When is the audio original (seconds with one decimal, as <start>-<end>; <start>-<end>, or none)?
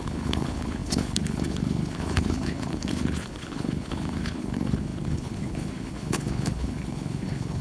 none